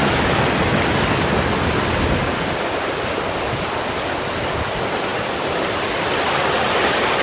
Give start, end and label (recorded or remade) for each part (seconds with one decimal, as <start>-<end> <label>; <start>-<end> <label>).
0.0-7.2 recorded